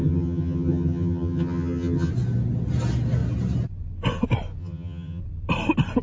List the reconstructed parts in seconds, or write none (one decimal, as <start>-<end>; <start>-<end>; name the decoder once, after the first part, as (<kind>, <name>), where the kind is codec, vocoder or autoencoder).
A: 0.0-2.1 (vocoder, HiFi-GAN); 4.6-5.2

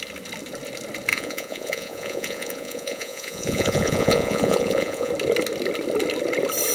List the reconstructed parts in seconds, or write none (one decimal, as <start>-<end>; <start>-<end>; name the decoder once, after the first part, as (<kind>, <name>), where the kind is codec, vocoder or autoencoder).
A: 1.1-5.1 (vocoder, Vocos)